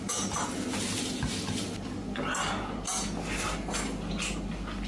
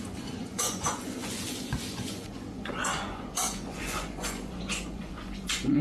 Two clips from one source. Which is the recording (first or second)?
first